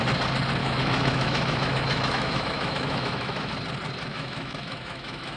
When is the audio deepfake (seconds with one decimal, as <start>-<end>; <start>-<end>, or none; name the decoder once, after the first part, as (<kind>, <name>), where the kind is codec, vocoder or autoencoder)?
0.6-3.5 (autoencoder, DAC-VAE); 4.1-5.4